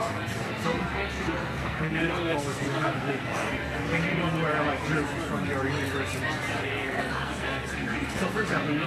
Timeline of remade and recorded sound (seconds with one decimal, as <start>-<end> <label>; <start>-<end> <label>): 0.0-4.1 remade; 4.1-6.6 recorded; 6.6-8.9 remade